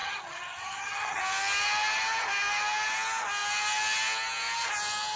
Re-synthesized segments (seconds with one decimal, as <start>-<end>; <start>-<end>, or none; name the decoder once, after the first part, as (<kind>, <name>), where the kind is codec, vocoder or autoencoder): 0.0-1.2 (vocoder, HiFi-GAN)